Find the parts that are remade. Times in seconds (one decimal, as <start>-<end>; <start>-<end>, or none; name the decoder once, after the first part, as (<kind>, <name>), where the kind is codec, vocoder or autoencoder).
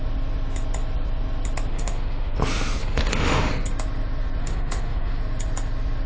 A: 1.7-2.4 (autoencoder, DAC-VAE); 2.8-3.5; 4.4-5.2